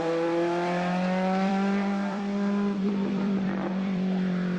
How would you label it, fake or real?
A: fake